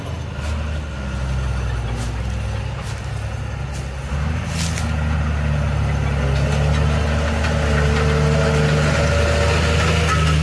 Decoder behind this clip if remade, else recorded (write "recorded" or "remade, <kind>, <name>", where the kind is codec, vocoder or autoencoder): recorded